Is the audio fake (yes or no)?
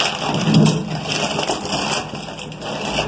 no